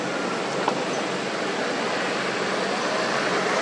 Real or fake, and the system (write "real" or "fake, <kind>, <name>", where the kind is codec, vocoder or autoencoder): real